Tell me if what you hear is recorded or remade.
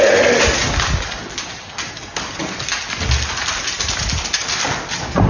recorded